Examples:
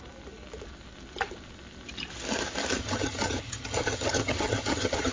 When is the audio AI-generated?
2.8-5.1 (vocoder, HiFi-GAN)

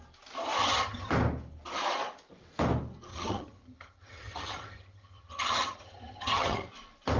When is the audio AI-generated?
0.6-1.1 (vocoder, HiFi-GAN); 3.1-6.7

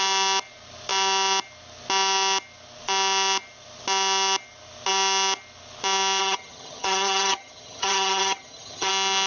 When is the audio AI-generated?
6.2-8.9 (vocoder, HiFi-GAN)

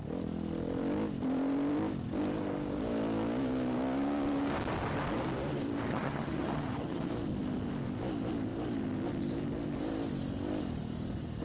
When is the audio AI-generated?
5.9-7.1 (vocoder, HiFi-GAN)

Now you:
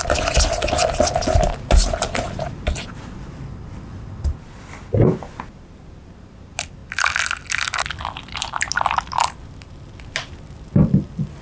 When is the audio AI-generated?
none

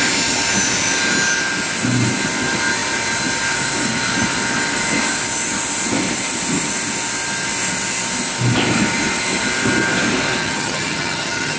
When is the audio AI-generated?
10.4-11.6 (vocoder, HiFi-GAN)

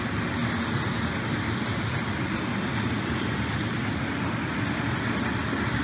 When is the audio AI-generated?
none